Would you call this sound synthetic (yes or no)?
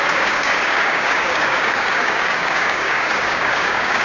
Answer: yes